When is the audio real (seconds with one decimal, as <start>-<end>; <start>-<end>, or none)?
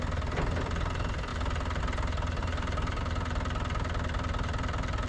0.0-2.4; 3.0-5.1